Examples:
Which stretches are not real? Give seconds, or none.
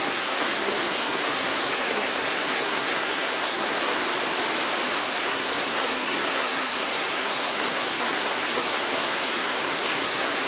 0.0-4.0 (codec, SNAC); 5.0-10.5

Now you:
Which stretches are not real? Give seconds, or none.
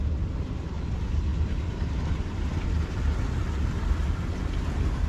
none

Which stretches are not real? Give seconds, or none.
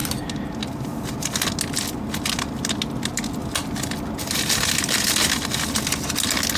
none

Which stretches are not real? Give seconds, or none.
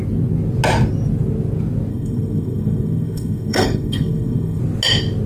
1.9-4.6 (codec, SNAC)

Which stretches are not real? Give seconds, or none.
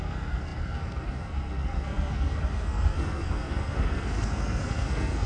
0.0-5.3 (codec, SNAC)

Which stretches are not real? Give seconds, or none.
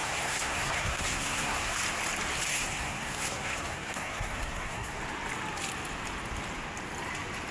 0.0-1.8 (codec, SNAC); 2.5-5.0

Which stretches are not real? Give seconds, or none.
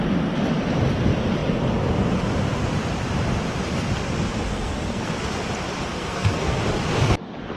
4.5-5.2 (codec, SNAC); 5.8-6.6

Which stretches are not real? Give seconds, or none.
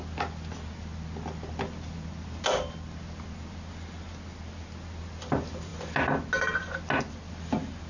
none